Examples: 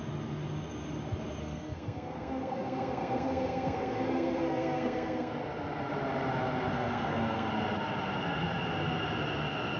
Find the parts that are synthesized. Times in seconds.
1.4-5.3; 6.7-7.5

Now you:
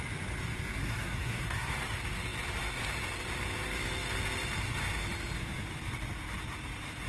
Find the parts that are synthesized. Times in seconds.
0.8-1.7

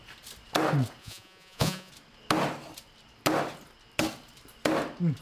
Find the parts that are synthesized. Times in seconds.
1.0-1.9

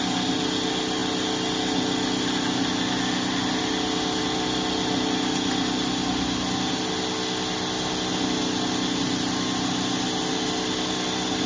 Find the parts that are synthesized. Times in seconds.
none

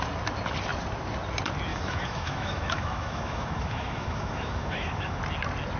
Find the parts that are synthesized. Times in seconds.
1.7-5.2

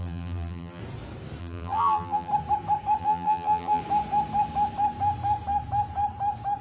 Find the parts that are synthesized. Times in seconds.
0.0-0.8; 1.4-2.3; 3.0-3.8

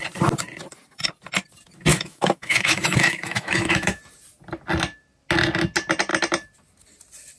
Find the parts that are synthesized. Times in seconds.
1.9-4.0